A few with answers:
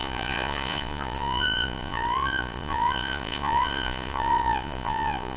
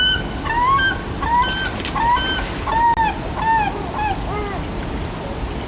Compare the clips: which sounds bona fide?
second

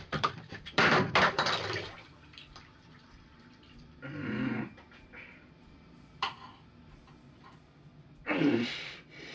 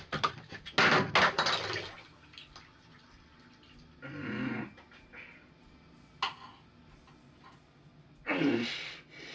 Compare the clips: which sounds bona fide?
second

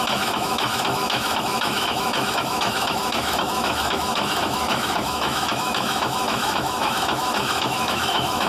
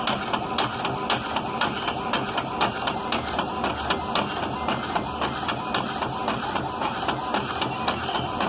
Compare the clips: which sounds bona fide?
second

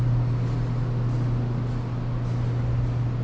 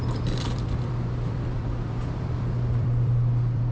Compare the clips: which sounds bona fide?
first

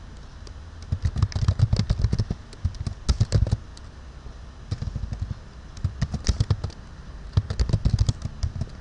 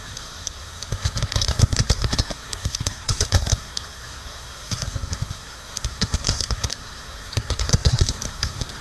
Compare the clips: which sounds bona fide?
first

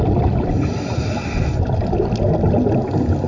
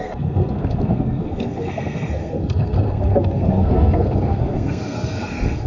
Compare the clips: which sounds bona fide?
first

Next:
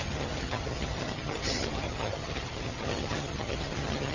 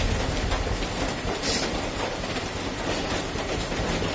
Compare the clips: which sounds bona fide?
second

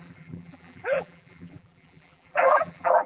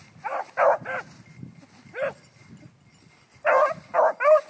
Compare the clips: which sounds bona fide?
second